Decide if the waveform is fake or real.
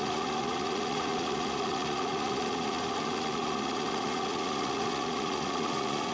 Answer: fake